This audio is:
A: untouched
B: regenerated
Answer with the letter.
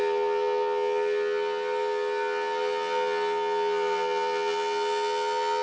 A